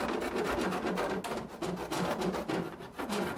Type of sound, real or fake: real